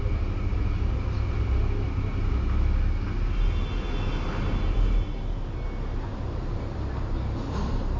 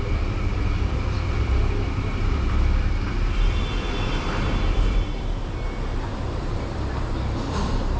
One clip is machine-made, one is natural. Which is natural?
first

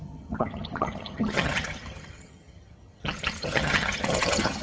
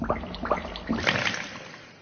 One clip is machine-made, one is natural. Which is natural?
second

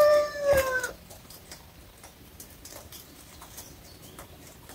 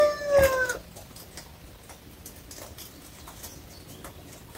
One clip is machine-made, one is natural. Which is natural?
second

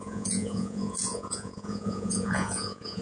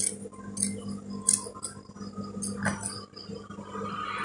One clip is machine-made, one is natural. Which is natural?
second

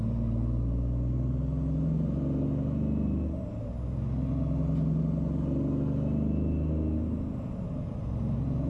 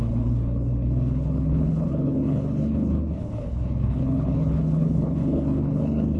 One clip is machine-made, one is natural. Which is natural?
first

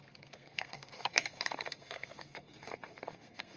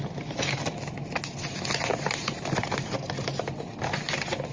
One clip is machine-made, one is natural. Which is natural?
second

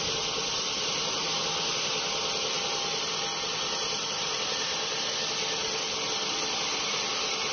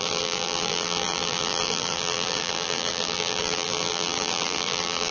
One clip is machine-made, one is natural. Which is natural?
first